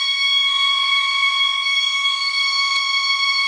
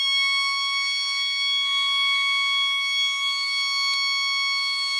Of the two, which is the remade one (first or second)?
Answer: first